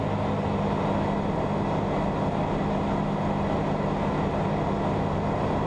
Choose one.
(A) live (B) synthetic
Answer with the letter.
A